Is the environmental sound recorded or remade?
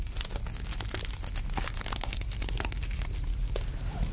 recorded